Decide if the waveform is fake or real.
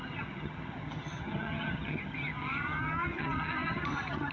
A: fake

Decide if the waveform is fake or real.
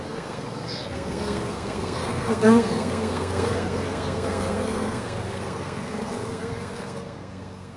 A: fake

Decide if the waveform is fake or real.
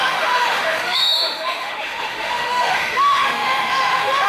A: fake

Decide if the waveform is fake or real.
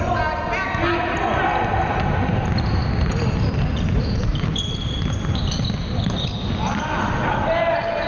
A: real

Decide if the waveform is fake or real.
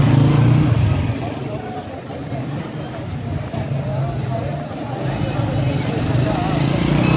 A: real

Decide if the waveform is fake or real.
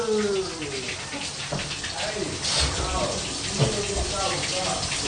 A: real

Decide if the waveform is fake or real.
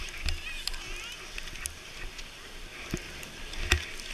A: real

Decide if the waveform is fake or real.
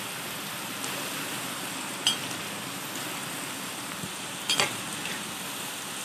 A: real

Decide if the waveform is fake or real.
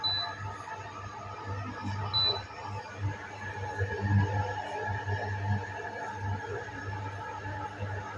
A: real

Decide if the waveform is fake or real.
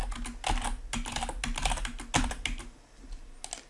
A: real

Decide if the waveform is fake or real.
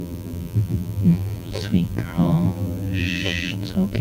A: fake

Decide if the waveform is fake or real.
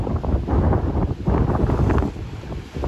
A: real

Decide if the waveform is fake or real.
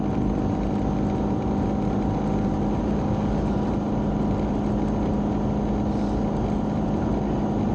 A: real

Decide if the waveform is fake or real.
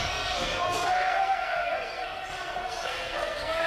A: fake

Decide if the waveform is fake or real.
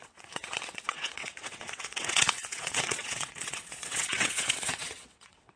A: fake